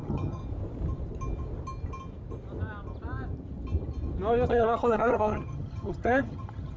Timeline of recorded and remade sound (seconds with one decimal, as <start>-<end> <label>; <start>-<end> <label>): 0.0-0.4 remade; 0.4-4.5 recorded; 4.5-6.8 remade